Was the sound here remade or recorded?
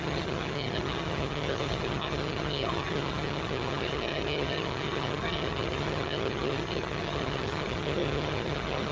remade